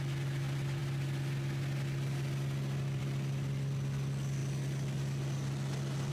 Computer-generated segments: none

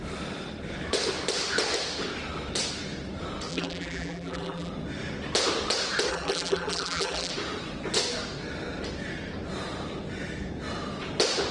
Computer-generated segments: 3.5-4.7 (vocoder, BigVGAN v2); 6.1-7.3

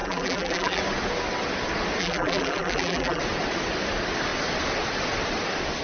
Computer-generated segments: 0.0-0.8 (vocoder, BigVGAN v2); 2.0-3.2

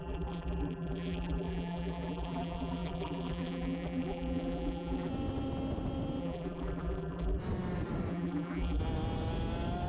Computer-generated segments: 0.0-5.1 (vocoder, BigVGAN v2); 6.2-7.4; 8.1-8.8

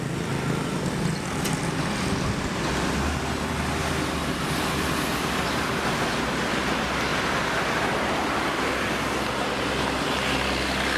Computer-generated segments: none

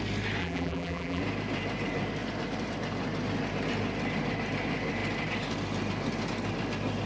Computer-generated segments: 0.4-1.2 (vocoder, BigVGAN v2)

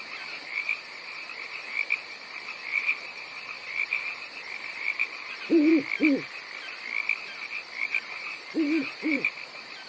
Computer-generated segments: 0.0-5.7 (vocoder, BigVGAN v2); 7.8-9.9